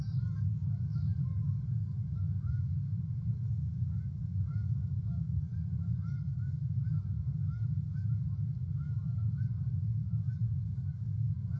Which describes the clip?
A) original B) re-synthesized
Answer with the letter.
B